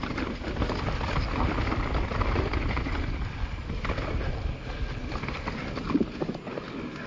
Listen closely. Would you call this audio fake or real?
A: real